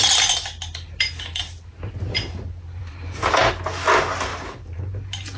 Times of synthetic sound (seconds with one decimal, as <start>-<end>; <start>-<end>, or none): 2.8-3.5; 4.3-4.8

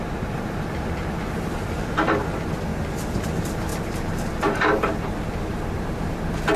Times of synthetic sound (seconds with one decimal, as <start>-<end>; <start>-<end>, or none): 0.0-2.7; 3.3-6.6

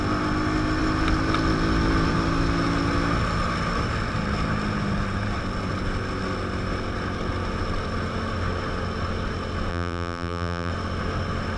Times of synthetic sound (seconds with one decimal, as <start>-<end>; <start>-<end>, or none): 9.7-10.7

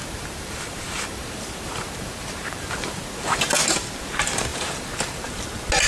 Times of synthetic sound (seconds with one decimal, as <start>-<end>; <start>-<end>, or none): 0.0-3.5; 4.5-5.3

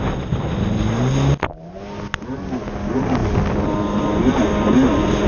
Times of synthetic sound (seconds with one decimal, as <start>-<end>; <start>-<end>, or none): none

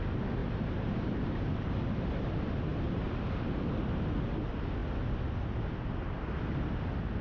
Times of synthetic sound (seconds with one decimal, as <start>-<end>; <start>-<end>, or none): 0.4-2.3; 2.7-3.2

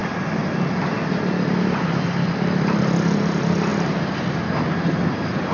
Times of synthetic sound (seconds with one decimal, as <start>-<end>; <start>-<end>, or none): 0.0-1.1

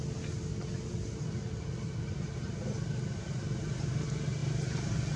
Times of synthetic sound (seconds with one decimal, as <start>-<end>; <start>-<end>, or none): none